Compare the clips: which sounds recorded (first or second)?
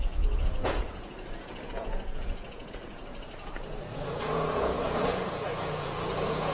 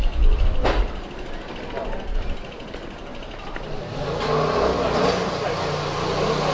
second